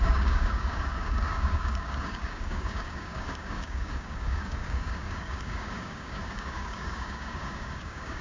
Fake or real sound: fake